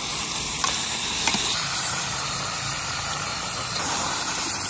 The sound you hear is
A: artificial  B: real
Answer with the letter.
A